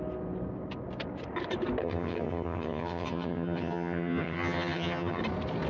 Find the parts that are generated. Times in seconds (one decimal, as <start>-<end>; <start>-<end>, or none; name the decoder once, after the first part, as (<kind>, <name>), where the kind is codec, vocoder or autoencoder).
1.8-5.2 (vocoder, HiFi-GAN)